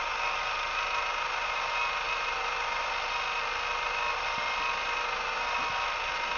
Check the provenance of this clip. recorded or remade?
recorded